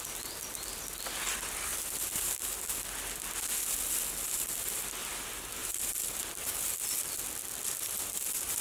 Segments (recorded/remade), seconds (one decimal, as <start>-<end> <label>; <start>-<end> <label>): 0.0-8.6 recorded